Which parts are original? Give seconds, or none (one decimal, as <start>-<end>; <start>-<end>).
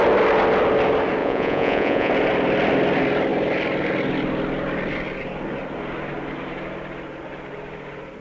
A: 0.0-1.2; 2.1-8.2